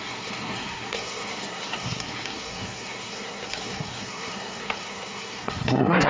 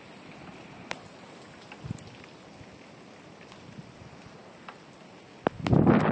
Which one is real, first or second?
second